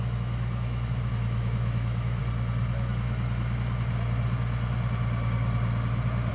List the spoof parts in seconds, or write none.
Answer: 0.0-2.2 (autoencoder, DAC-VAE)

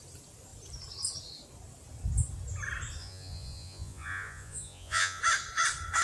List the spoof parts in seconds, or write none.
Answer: 3.0-5.2 (vocoder, Vocos)

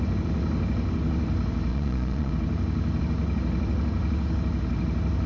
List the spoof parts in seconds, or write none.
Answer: 1.7-2.3 (vocoder, Vocos)

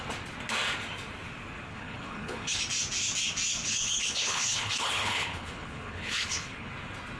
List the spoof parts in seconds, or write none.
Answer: 1.7-2.6 (codec, HILCodec); 3.6-6.7

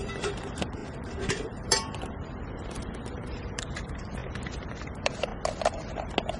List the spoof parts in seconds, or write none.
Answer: 0.0-4.2 (vocoder, BigVGAN v2); 4.8-5.3

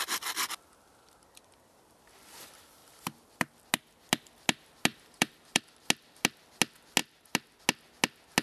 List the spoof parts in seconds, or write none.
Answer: 4.9-5.6 (vocoder, BigVGAN v2)

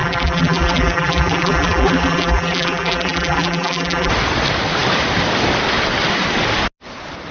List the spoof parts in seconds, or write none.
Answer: 0.0-4.1 (vocoder, BigVGAN v2)

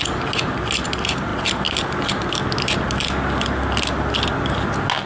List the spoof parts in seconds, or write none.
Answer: none